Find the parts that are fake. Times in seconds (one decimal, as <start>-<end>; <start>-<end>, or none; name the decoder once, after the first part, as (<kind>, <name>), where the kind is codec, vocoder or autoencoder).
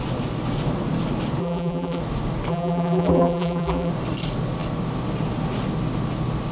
1.4-2.0 (vocoder, BigVGAN v2); 2.5-3.9